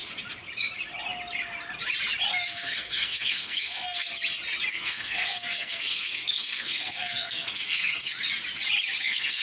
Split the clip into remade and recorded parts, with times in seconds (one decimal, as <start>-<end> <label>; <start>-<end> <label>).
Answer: 0.0-2.3 recorded; 2.3-4.1 remade; 4.1-4.7 recorded; 4.7-8.1 remade; 8.1-9.0 recorded; 9.0-9.4 remade